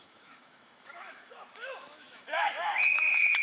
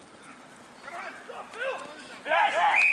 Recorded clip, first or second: second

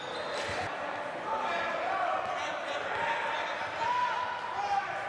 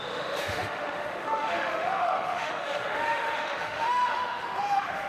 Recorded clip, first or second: first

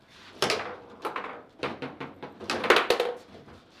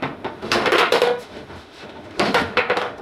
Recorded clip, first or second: first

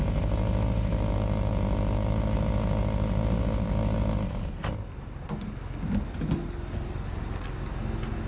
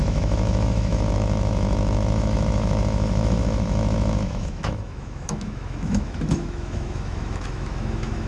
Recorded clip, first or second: first